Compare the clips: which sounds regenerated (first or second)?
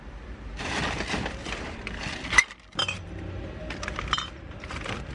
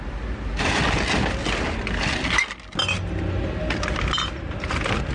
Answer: first